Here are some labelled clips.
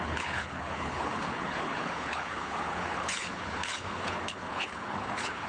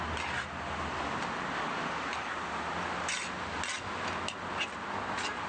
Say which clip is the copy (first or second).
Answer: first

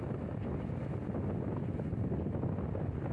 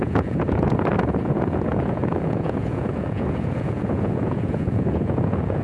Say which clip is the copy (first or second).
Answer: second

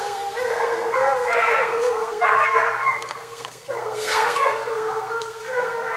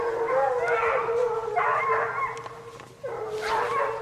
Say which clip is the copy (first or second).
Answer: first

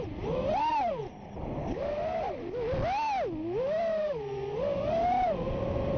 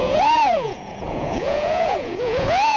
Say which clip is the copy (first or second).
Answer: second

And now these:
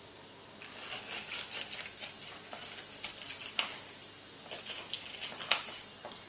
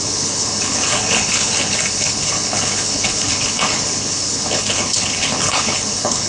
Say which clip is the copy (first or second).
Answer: second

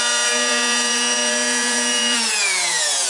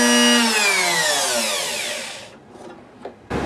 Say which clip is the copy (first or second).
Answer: first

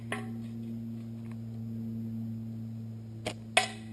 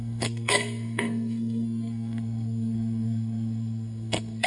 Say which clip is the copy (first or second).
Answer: second